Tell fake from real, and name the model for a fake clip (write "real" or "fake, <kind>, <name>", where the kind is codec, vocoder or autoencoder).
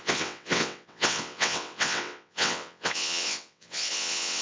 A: fake, vocoder, WaveNeXt